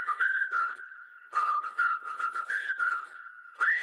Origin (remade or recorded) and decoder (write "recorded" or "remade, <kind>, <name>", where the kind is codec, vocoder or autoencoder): remade, codec, HILCodec